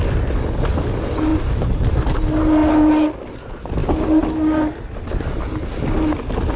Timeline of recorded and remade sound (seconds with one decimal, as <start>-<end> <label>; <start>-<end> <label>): 0.0-1.3 recorded; 1.3-1.9 remade; 1.9-6.6 recorded